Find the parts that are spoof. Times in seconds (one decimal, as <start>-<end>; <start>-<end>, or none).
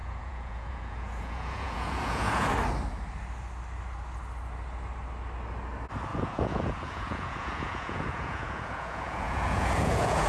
0.0-2.5; 6.1-10.3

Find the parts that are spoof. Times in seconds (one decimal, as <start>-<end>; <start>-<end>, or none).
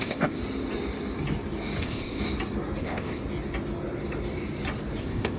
0.0-0.4; 1.8-2.2; 2.8-3.2; 5.0-5.4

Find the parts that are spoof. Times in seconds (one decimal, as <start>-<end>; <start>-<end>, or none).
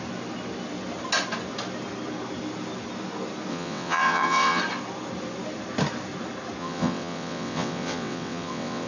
3.5-4.6; 6.6-8.9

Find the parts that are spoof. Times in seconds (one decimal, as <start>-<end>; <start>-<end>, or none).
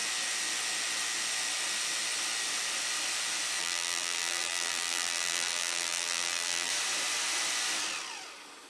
3.6-6.7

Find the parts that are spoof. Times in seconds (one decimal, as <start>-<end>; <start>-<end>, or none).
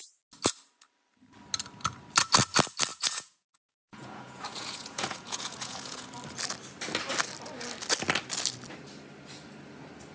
2.9-6.1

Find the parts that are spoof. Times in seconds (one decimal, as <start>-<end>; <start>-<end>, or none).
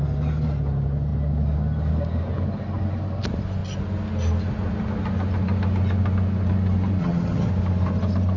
7.0-7.5